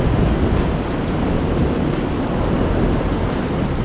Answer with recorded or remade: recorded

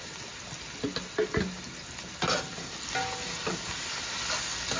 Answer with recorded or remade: recorded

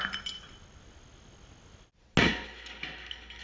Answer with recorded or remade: recorded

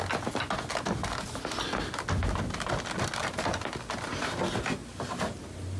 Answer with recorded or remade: recorded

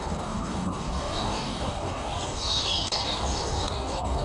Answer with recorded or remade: remade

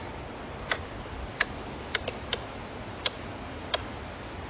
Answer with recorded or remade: recorded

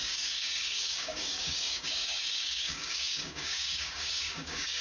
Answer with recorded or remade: remade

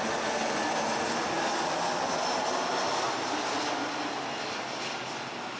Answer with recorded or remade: recorded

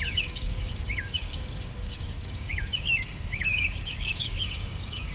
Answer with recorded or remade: remade